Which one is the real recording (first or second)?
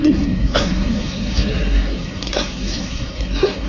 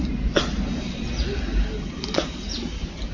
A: second